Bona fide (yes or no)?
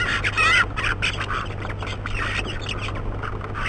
yes